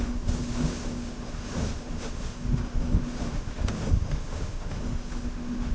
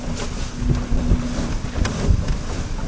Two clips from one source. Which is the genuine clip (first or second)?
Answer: second